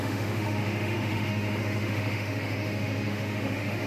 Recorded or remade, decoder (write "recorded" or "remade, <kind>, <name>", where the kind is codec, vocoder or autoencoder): remade, autoencoder, DAC-VAE